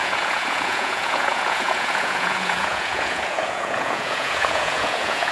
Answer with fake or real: fake